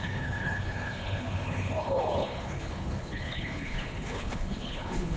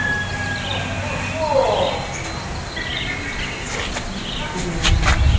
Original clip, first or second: second